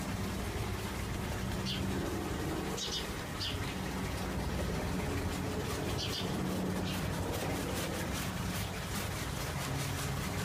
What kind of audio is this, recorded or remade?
recorded